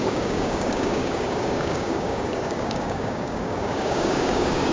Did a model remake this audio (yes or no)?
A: yes